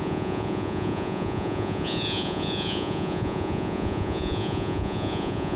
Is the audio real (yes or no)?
no